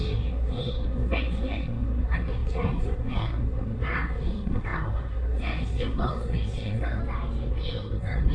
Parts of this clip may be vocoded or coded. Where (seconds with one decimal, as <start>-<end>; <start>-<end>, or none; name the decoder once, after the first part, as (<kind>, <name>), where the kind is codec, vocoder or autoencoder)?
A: 0.0-7.0 (codec, SNAC); 7.5-8.3